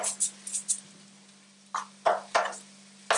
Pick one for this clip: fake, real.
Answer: real